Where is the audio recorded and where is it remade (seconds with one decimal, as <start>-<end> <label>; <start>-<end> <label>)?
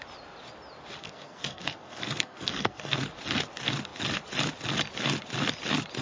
0.0-1.0 recorded; 1.0-3.0 remade; 3.0-6.0 recorded